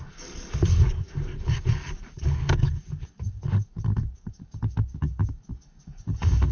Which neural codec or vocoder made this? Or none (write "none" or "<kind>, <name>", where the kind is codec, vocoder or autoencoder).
codec, DAC